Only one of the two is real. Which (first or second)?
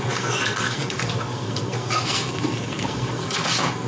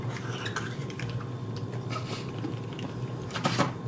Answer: second